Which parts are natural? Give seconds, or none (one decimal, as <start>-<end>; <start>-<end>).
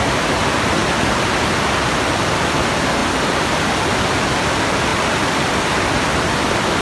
0.0-6.8